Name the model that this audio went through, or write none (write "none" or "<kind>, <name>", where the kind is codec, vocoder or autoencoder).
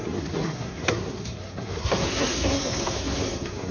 codec, SNAC